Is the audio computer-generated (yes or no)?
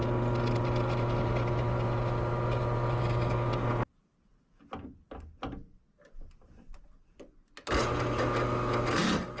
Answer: no